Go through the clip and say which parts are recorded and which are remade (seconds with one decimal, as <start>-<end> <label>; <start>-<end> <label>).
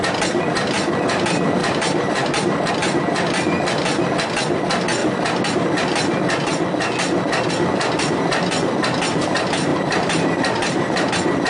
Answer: 0.0-1.6 recorded; 1.6-2.7 remade; 2.7-9.7 recorded; 9.7-11.1 remade; 11.1-11.5 recorded